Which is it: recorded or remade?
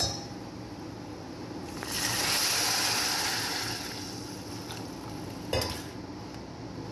recorded